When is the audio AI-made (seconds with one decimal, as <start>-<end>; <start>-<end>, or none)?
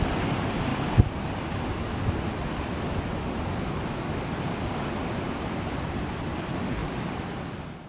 none